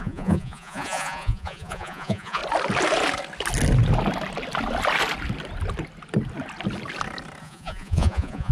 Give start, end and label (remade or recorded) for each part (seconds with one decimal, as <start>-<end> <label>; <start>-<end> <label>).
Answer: 0.0-2.4 remade; 2.4-7.4 recorded; 7.4-8.5 remade